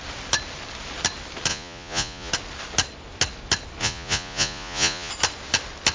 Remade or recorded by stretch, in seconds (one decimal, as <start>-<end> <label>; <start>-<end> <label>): 0.0-1.5 recorded; 1.5-2.3 remade; 2.3-3.8 recorded; 3.8-5.1 remade; 5.1-5.9 recorded

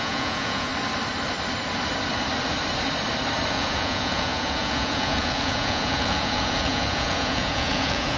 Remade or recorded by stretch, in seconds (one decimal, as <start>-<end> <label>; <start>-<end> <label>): 0.0-0.7 remade; 0.7-3.5 recorded; 3.5-8.2 remade